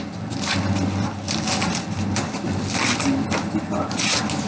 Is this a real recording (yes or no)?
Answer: yes